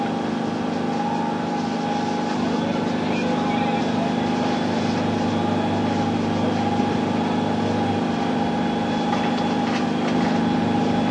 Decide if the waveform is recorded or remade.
recorded